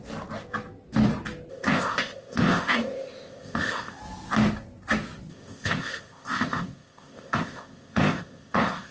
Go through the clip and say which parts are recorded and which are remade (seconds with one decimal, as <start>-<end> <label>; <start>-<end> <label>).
0.0-1.5 recorded; 1.5-4.0 remade; 4.0-5.3 recorded; 5.3-8.9 remade